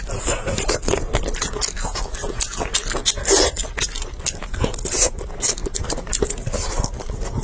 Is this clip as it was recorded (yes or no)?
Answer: yes